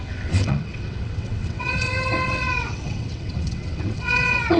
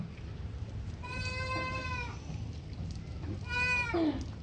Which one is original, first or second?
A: second